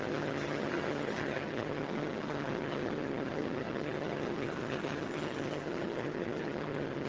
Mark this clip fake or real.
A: fake